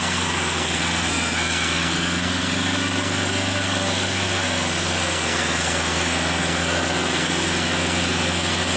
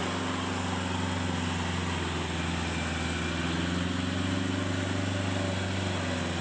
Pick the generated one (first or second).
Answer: first